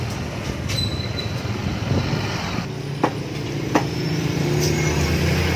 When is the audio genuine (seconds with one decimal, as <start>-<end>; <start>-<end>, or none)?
0.0-5.6

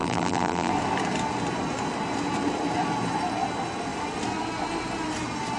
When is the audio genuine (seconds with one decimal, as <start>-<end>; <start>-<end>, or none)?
0.7-5.6

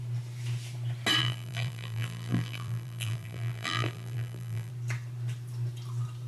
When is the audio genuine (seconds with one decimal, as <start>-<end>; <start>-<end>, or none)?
0.0-1.2; 4.7-6.3

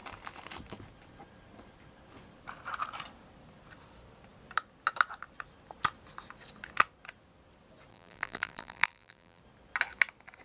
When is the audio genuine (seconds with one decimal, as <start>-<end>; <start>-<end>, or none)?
0.0-7.9; 9.4-10.4

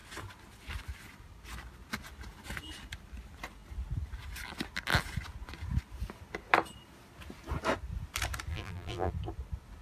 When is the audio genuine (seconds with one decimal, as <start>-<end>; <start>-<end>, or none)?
0.0-8.5; 9.1-9.8

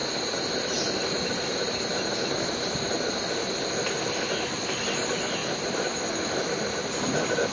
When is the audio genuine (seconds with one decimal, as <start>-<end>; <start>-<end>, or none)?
3.5-5.4; 6.5-7.5

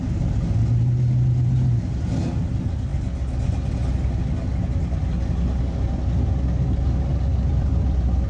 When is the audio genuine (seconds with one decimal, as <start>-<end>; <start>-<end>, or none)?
0.0-7.3

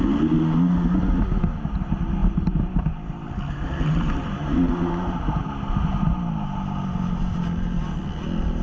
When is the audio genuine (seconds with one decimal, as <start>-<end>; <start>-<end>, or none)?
0.0-2.2; 5.6-8.6